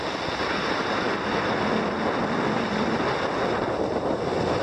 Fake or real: real